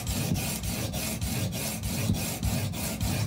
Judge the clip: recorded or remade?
recorded